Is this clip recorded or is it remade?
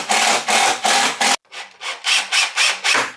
recorded